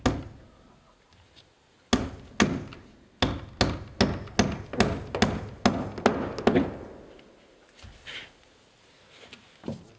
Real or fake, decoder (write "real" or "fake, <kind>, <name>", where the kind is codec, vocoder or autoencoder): real